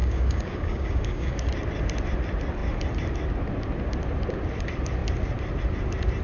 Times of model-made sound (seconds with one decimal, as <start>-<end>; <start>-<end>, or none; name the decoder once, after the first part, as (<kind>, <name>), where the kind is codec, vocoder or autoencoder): 0.0-1.5 (codec, DAC)